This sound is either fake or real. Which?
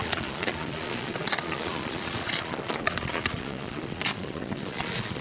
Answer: fake